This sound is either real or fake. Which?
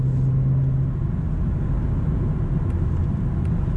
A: real